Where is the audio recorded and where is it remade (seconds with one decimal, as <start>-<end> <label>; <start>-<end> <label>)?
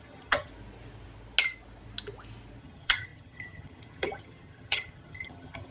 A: 0.0-0.5 remade; 0.5-2.6 recorded; 2.6-5.7 remade